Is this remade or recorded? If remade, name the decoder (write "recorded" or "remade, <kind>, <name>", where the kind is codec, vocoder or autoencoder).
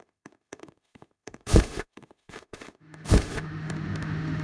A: remade, autoencoder, DAC-VAE